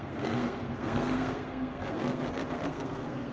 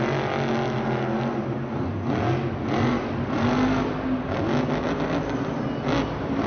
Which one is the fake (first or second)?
first